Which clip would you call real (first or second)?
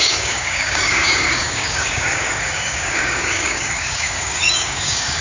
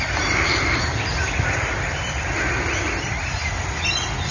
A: second